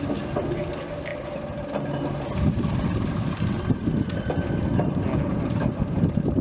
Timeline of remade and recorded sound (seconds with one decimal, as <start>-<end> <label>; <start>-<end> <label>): 0.0-6.4 recorded